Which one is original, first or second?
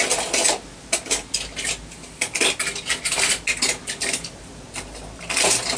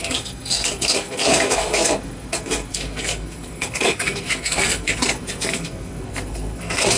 first